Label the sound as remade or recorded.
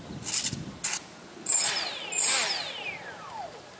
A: recorded